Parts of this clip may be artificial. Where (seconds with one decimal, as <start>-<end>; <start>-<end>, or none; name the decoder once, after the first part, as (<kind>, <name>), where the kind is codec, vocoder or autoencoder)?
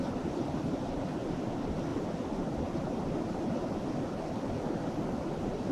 1.9-3.4 (vocoder, BigVGAN v2)